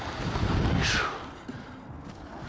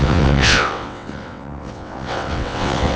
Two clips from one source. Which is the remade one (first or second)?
second